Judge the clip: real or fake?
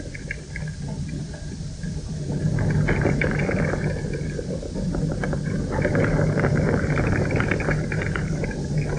real